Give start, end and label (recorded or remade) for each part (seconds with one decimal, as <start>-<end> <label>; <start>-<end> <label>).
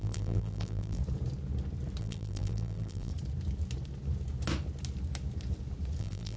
0.0-1.0 remade; 1.0-2.0 recorded; 2.0-3.1 remade; 3.1-6.0 recorded; 6.0-6.4 remade